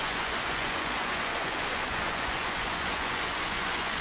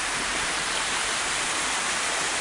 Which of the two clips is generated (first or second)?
first